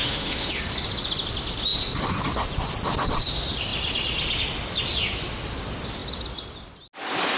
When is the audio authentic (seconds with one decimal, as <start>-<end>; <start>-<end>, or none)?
0.5-7.4